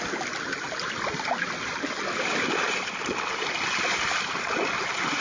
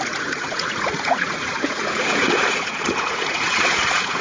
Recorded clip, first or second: first